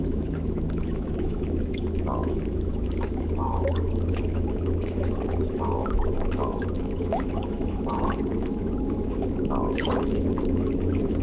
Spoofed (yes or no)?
yes